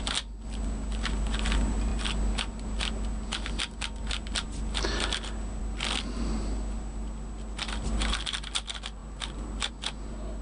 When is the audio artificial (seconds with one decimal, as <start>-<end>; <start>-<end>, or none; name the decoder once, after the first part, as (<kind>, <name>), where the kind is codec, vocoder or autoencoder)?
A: none